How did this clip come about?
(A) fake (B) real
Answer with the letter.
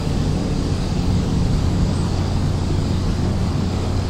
A